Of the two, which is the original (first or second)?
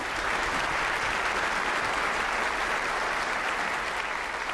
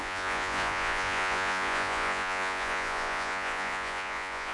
first